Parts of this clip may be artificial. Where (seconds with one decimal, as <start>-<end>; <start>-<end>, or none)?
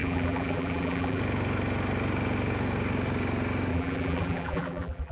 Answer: 0.0-1.2; 3.7-5.1